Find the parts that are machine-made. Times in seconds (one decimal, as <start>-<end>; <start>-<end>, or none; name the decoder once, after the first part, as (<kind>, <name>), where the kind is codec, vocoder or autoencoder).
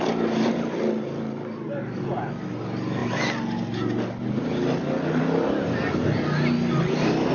none